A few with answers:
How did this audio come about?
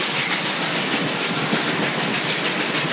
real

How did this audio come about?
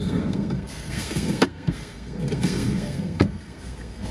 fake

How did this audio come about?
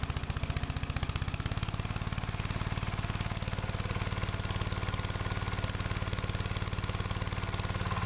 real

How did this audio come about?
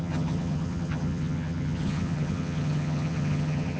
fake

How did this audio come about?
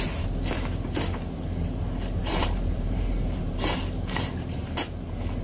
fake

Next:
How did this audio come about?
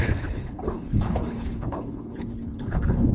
fake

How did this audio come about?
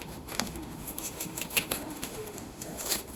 fake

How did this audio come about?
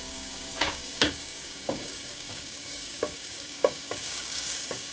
fake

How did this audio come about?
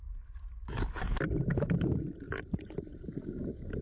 real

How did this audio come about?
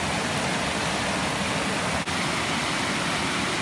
real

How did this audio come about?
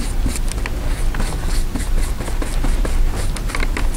real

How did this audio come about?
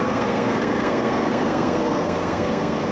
fake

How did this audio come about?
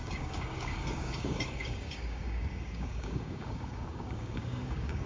fake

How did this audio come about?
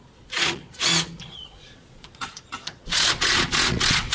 fake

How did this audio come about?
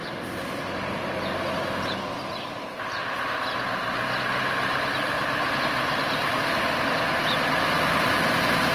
real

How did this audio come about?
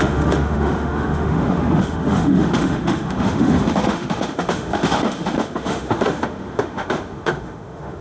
fake